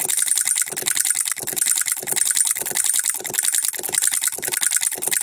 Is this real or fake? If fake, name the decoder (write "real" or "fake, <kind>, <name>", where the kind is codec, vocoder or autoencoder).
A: real